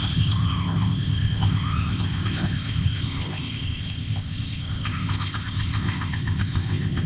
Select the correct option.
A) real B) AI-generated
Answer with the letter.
B